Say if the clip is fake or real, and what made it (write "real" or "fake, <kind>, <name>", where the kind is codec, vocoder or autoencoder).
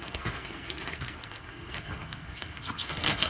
fake, codec, SNAC